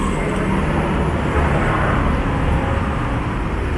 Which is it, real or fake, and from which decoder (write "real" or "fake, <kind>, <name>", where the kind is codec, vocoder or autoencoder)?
real